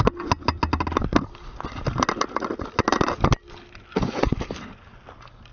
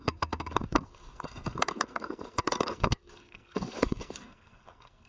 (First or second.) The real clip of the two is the first